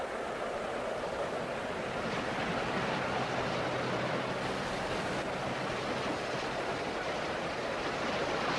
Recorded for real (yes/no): yes